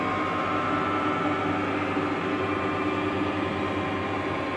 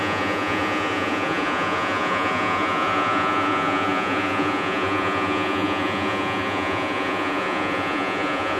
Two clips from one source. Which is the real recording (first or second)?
first